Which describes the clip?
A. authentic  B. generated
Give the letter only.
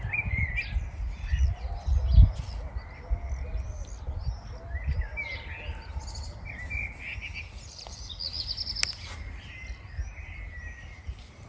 A